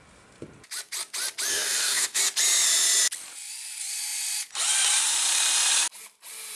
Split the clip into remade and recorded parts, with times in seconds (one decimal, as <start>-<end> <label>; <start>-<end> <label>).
0.0-1.5 recorded; 1.5-2.2 remade; 2.2-6.6 recorded